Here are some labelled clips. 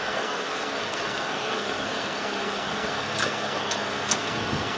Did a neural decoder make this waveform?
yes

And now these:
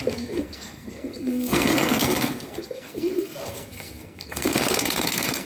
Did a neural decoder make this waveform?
yes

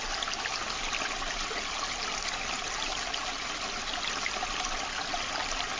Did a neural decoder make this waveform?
no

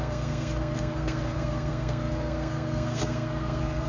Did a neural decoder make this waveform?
yes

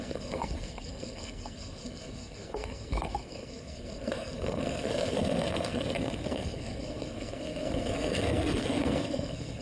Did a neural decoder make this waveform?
yes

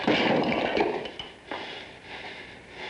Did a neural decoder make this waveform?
no